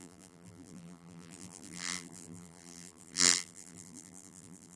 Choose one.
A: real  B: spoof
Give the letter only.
B